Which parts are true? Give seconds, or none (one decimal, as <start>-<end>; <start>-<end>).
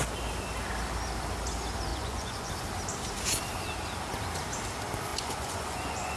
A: 0.0-1.9; 2.5-5.1